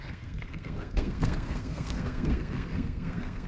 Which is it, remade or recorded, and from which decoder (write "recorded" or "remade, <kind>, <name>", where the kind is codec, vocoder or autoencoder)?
remade, codec, SNAC